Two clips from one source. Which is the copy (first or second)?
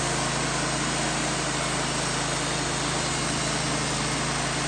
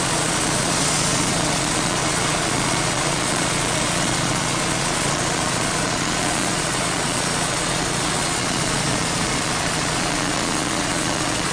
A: second